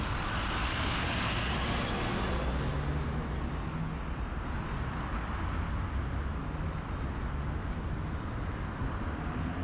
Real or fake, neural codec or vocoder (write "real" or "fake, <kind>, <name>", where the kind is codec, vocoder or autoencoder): real